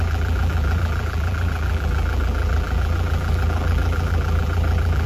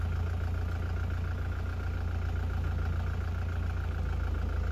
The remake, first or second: first